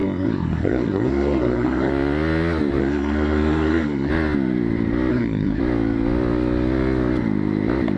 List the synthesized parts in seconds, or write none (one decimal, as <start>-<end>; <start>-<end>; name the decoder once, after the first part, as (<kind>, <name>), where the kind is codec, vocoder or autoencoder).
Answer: 0.0-1.9 (codec, SNAC); 2.8-4.1; 5.1-5.6